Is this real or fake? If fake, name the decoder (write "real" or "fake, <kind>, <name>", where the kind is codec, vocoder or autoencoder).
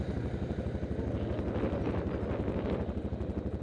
real